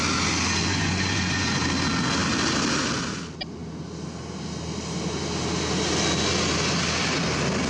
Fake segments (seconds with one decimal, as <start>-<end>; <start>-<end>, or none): 0.7-1.6